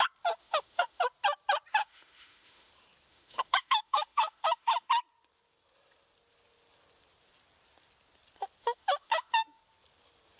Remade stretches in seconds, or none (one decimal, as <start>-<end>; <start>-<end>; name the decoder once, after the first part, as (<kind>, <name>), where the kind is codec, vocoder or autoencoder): 0.4-1.0 (autoencoder, DAC-VAE); 1.7-2.7; 3.1-4.9; 8.6-9.6